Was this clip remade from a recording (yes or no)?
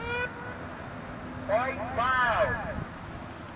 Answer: no